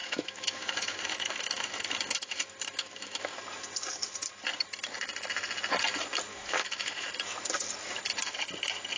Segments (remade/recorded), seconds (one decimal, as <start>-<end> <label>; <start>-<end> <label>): 0.0-3.4 remade; 3.4-6.3 recorded; 6.3-7.1 remade; 7.1-9.0 recorded